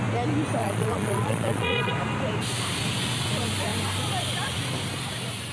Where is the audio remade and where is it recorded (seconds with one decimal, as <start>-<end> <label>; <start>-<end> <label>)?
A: 0.0-0.6 recorded; 0.6-1.9 remade; 1.9-5.5 recorded